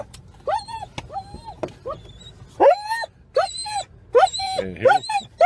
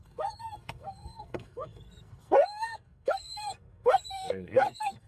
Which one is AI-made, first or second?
second